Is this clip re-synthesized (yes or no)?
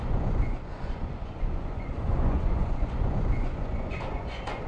yes